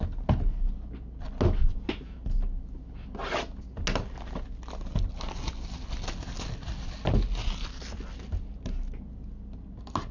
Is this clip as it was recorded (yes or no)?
yes